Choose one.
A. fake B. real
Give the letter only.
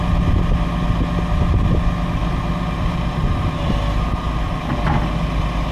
B